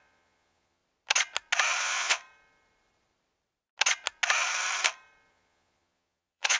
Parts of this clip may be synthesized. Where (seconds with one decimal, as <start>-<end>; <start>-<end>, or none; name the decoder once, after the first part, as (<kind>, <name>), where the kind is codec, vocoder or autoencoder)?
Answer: 0.0-0.8 (vocoder, Vocos); 1.8-2.2; 5.3-6.6